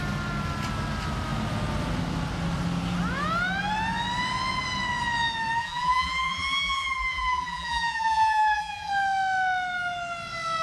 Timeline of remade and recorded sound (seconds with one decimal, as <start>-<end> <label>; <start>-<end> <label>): 0.0-5.6 recorded; 5.6-8.9 remade; 8.9-10.6 recorded